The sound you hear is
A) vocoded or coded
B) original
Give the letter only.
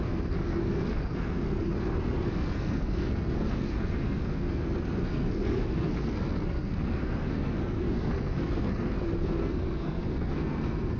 A